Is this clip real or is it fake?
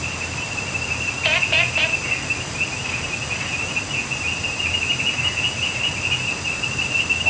real